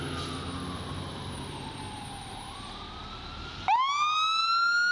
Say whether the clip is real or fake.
real